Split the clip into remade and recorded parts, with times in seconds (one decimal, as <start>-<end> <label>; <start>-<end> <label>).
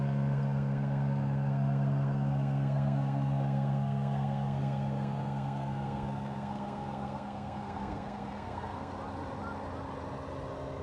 0.0-8.9 remade; 8.9-10.8 recorded